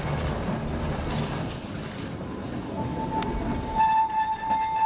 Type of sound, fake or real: real